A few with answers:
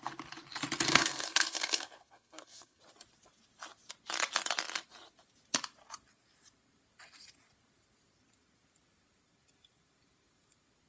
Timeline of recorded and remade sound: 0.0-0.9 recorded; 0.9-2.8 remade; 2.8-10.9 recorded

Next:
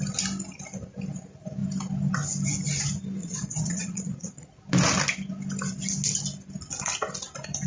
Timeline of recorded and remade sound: 0.0-3.2 recorded; 3.2-4.5 remade; 4.5-7.7 recorded

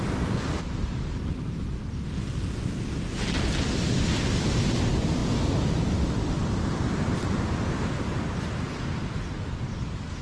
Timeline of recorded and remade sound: 0.0-10.2 recorded

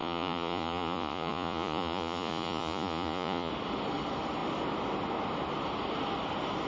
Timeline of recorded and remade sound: 0.0-3.5 remade; 3.5-6.7 recorded

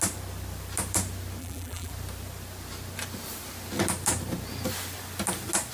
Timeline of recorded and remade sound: 0.0-1.4 recorded; 1.4-1.9 remade; 1.9-5.7 recorded

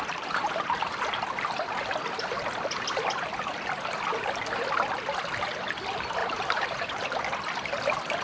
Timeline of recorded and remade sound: 0.0-6.2 recorded; 6.2-7.2 remade; 7.2-8.2 recorded

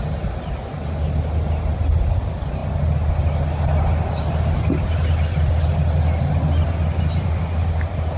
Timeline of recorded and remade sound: 0.0-8.2 recorded